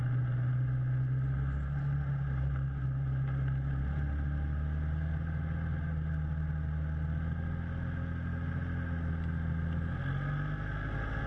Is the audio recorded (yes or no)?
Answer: yes